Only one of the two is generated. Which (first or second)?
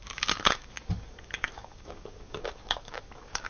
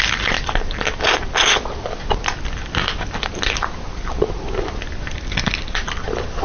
first